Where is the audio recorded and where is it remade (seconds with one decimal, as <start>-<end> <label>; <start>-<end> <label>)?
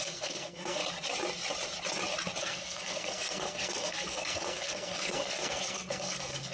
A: 0.0-0.8 remade; 0.8-2.4 recorded; 2.4-6.5 remade